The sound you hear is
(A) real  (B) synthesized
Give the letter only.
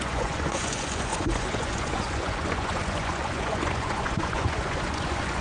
B